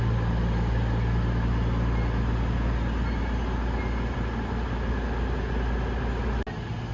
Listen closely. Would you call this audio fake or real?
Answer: real